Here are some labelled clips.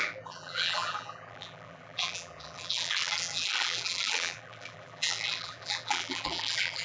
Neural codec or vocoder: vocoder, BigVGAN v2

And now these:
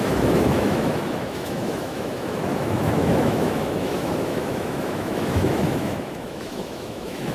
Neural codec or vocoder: autoencoder, DAC-VAE